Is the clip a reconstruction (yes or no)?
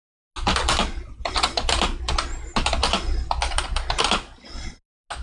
no